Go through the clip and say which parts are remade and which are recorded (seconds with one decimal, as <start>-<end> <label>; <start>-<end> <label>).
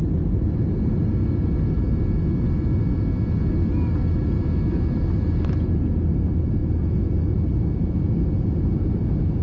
0.0-9.4 recorded